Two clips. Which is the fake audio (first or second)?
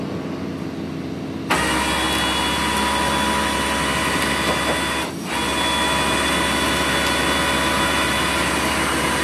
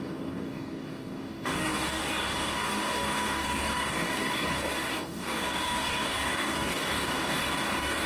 second